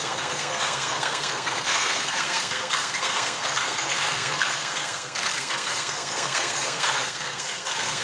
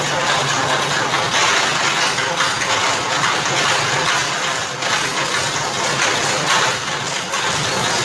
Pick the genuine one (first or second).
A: second